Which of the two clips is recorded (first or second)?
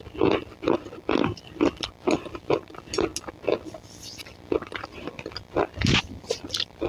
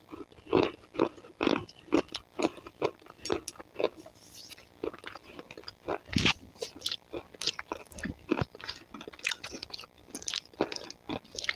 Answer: second